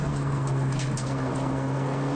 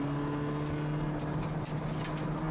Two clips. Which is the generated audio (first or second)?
first